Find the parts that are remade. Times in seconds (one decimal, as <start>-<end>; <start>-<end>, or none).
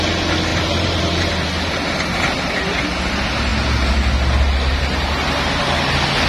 0.5-1.3